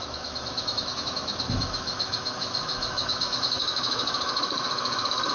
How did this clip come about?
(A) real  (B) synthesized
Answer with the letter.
B